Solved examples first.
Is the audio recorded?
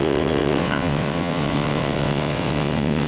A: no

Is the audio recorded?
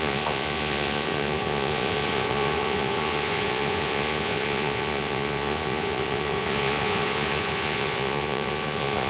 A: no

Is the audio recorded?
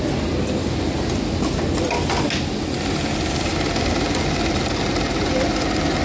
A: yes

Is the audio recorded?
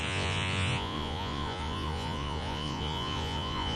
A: no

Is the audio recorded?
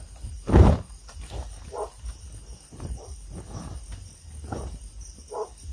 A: yes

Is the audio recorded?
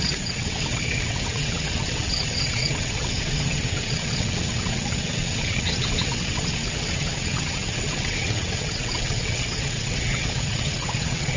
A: no